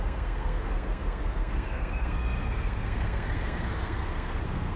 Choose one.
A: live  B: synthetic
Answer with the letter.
B